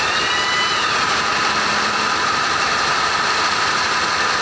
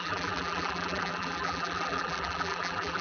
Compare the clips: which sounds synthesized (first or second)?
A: second